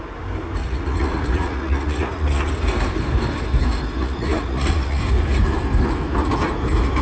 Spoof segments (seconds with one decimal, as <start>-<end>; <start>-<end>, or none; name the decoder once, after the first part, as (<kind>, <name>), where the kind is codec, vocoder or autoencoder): 0.6-2.5 (vocoder, Vocos); 4.0-5.0